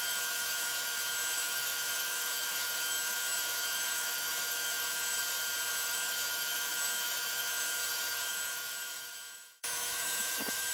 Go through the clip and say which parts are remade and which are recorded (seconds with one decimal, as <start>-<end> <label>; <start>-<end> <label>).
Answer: 0.0-5.2 remade; 5.2-5.7 recorded; 5.7-10.7 remade